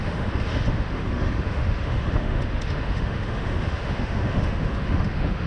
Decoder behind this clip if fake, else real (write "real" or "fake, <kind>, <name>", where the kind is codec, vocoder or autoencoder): fake, autoencoder, DAC-VAE